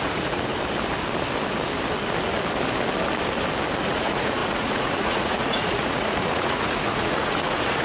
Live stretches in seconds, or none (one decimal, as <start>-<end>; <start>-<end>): 0.5-3.9